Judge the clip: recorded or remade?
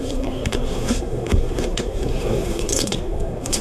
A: remade